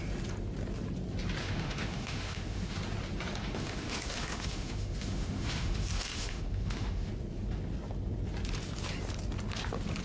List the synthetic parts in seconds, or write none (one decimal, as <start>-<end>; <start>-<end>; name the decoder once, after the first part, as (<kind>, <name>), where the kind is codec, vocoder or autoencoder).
1.4-2.8 (autoencoder, DAC-VAE); 3.4-7.1